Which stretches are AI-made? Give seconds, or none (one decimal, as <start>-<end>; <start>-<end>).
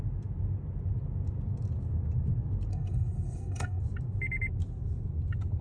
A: 2.7-3.8